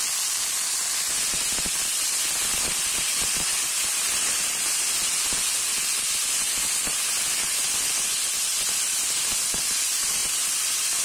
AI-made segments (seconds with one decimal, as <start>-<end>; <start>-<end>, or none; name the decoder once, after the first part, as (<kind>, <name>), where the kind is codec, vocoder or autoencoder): none